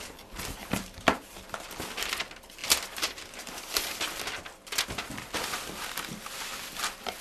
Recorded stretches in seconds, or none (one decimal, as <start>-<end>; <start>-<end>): 0.0-0.6; 1.7-7.2